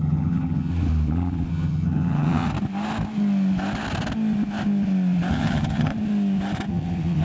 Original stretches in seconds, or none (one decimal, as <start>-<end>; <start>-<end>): 0.7-1.5; 2.5-5.3; 5.9-6.7

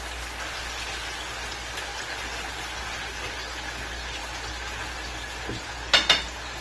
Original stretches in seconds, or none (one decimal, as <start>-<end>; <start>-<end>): 0.0-6.6